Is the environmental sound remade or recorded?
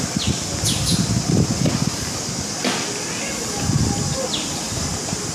recorded